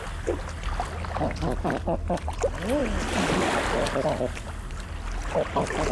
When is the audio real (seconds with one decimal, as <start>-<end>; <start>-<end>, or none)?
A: 0.0-5.9